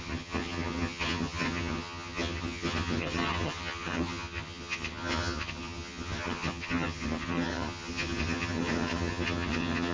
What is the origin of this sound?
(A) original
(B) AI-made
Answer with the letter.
B